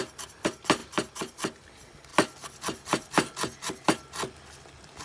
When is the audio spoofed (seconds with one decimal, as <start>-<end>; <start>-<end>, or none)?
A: none